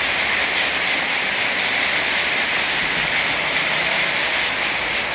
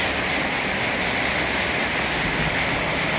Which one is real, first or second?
second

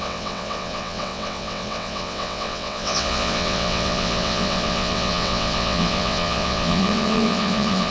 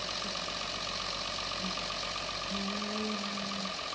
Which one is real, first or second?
second